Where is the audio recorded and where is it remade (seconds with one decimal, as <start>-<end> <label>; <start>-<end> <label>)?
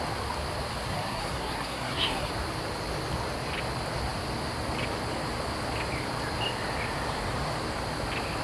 0.0-0.7 recorded; 0.7-2.3 remade; 2.3-8.4 recorded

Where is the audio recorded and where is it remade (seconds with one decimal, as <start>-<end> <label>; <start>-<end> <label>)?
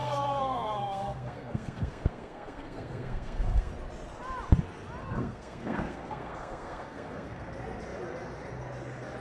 0.0-3.7 remade; 3.7-5.0 recorded; 5.0-7.5 remade; 7.5-9.2 recorded